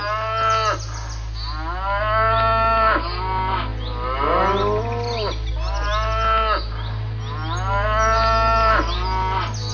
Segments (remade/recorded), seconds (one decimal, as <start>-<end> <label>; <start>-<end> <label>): 0.0-9.7 recorded